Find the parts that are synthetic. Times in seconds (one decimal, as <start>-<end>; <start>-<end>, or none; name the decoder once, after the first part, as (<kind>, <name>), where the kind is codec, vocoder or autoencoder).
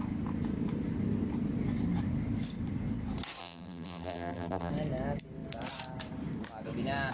3.4-4.7 (vocoder, BigVGAN v2)